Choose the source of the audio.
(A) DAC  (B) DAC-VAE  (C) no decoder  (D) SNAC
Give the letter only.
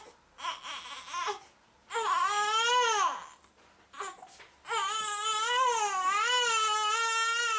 C